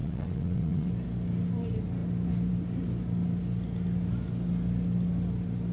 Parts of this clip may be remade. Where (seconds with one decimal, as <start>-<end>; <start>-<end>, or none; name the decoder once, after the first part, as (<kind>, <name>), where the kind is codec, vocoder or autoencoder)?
0.0-0.9 (vocoder, WaveNeXt)